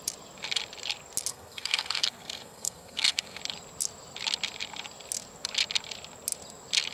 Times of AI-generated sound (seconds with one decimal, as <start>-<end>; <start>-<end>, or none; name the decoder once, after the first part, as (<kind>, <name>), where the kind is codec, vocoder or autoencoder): 1.3-3.4 (codec, SNAC)